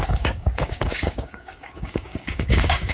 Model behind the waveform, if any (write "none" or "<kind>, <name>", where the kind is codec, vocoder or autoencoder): codec, DAC